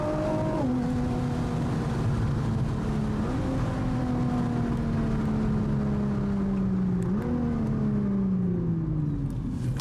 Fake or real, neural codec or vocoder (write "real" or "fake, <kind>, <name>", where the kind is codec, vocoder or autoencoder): real